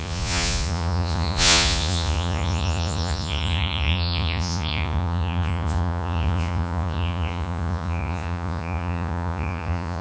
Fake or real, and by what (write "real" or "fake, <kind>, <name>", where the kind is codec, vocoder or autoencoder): fake, vocoder, Vocos